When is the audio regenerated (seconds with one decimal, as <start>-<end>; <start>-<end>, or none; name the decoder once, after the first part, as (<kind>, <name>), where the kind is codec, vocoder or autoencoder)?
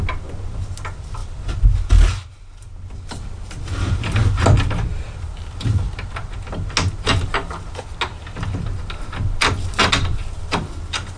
none